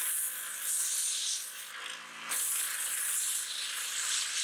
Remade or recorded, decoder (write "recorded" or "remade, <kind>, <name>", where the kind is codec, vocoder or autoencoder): recorded